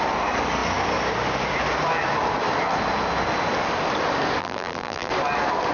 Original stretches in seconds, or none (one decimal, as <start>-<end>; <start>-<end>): 0.0-4.4; 5.1-5.7